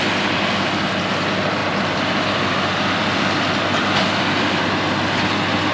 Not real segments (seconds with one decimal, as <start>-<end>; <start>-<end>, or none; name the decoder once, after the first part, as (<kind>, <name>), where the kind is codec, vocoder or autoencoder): none